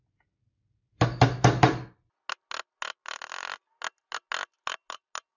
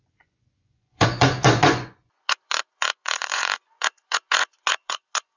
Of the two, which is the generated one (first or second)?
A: second